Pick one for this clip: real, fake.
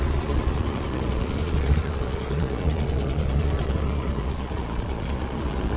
fake